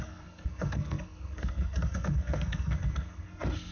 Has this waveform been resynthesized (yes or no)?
yes